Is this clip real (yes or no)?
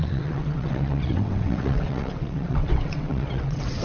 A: no